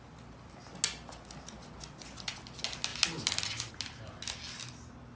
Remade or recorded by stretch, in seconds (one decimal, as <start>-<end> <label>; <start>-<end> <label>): 0.0-5.2 recorded